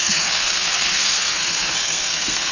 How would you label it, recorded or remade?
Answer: remade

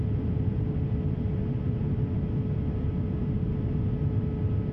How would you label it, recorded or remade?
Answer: recorded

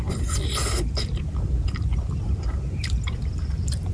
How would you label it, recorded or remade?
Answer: remade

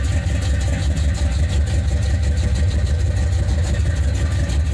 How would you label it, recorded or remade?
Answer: recorded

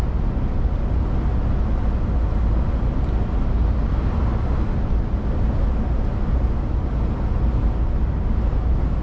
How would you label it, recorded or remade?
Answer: recorded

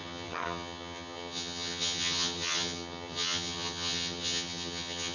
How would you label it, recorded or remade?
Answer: remade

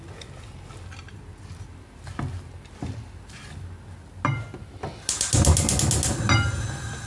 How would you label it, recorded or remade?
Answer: recorded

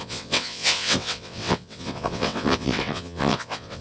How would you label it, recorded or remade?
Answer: remade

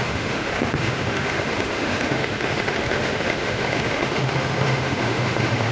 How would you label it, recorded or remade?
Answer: remade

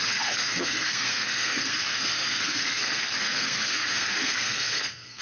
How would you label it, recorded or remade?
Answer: remade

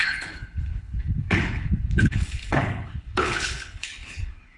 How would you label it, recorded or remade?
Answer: remade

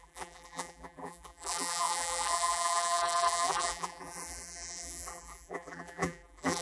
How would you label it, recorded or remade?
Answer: remade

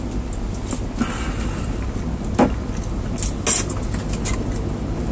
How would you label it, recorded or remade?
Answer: recorded